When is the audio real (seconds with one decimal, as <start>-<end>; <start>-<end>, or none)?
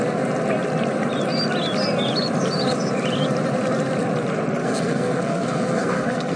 0.0-4.6